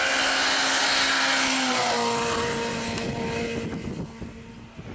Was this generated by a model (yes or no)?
no